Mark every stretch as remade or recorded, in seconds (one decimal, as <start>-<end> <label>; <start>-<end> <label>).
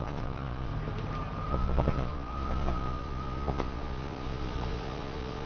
0.0-0.7 remade; 0.7-1.5 recorded; 1.5-5.5 remade